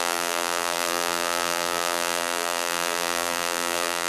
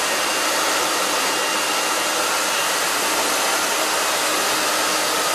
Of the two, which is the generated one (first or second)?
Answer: first